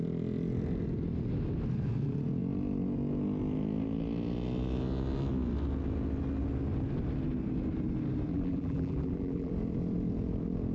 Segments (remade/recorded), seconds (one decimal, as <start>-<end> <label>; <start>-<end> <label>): 0.0-8.3 recorded; 8.3-9.5 remade; 9.5-10.7 recorded